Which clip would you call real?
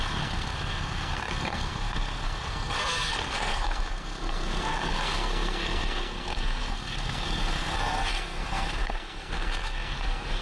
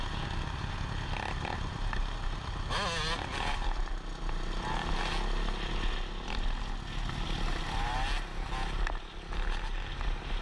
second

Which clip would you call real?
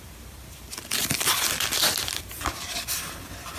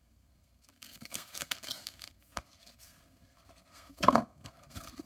first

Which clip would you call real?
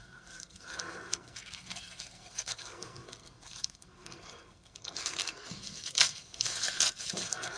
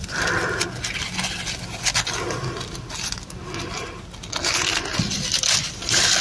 second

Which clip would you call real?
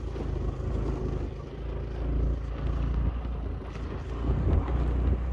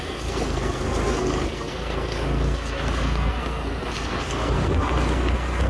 first